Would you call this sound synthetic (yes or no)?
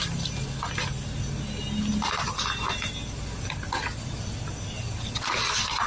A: no